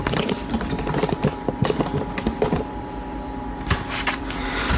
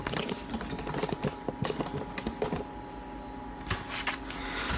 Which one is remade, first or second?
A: first